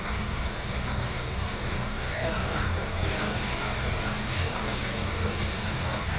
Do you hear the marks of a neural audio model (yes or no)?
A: yes